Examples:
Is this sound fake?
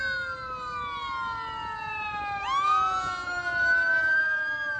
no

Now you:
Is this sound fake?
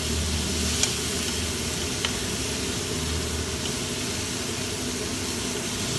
no